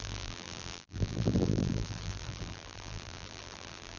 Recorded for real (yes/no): no